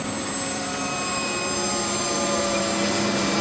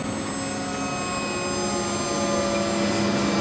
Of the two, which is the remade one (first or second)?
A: first